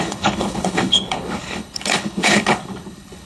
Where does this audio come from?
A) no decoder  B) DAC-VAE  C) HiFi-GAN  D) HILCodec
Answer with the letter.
D